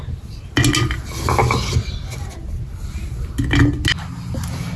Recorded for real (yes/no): yes